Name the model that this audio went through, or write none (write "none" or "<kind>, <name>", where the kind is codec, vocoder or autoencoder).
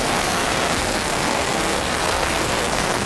codec, SNAC